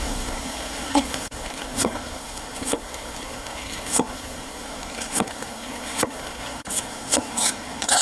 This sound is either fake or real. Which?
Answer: fake